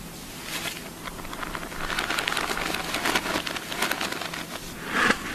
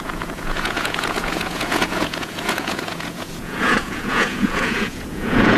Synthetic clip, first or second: second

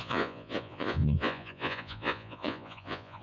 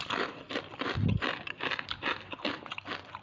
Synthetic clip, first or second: first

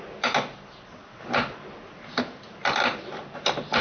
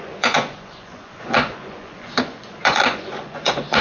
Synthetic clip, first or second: second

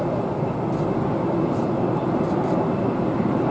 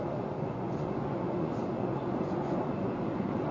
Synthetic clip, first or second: second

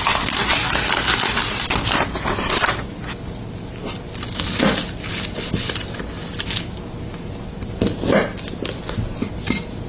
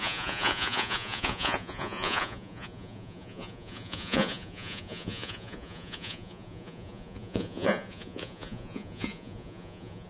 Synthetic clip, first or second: second